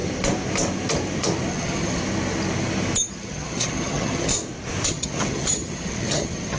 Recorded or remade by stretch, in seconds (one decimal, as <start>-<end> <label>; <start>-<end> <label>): 0.0-1.5 recorded; 1.5-2.0 remade; 2.0-3.1 recorded; 3.1-4.3 remade; 4.3-4.9 recorded; 4.9-6.6 remade